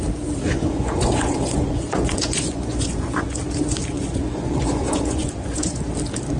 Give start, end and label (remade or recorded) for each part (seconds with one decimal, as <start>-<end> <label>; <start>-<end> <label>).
0.0-0.5 recorded; 0.5-3.4 remade; 3.4-3.9 recorded; 3.9-5.8 remade; 5.8-6.4 recorded

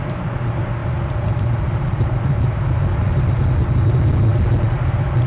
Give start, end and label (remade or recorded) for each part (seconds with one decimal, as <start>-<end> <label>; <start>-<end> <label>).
0.0-5.3 recorded

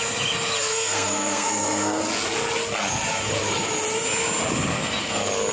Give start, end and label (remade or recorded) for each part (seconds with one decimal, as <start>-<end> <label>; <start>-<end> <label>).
0.0-0.6 recorded; 0.6-2.0 remade; 2.0-5.5 recorded

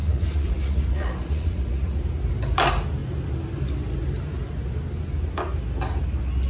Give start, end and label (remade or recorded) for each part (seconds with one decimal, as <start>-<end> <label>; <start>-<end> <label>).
0.0-2.0 remade; 2.0-6.5 recorded